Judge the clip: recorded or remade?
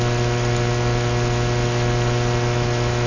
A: recorded